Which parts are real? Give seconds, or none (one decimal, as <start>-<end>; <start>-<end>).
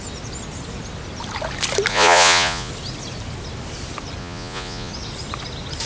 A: 0.0-1.9; 2.7-4.2; 4.9-5.9